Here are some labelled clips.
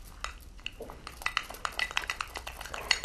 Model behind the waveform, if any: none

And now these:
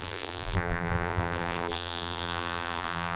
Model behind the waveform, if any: vocoder, BigVGAN v2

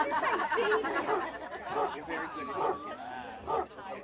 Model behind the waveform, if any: vocoder, BigVGAN v2